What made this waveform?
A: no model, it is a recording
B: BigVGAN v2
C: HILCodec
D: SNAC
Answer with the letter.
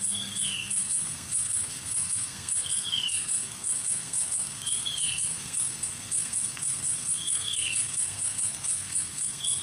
D